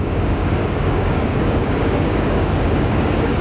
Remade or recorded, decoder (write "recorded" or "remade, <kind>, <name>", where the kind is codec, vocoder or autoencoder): remade, codec, DAC